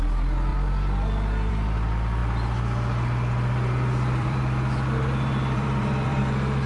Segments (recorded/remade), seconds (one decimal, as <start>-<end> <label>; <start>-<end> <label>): 0.0-0.5 recorded; 0.5-1.5 remade; 1.5-2.2 recorded; 2.2-6.2 remade; 6.2-6.7 recorded